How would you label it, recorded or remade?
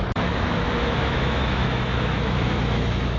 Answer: remade